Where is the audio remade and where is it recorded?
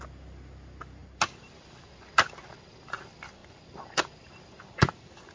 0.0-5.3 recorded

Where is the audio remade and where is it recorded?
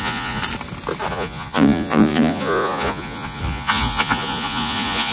0.0-0.4 remade; 0.4-1.1 recorded; 1.1-5.1 remade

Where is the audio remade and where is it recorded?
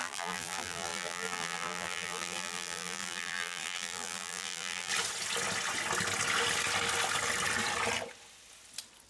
0.0-4.9 remade; 4.9-9.1 recorded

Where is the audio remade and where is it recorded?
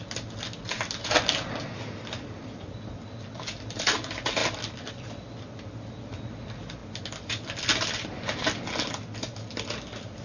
0.0-10.2 recorded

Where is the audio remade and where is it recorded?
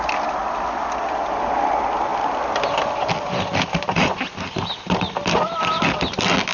0.0-6.5 recorded